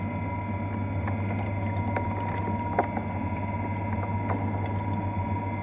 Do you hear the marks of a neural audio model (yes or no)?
no